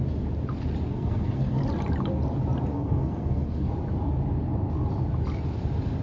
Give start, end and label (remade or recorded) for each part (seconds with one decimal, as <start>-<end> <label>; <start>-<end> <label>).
0.0-0.9 recorded; 0.9-1.6 remade; 1.6-2.7 recorded; 2.7-3.7 remade; 3.7-6.0 recorded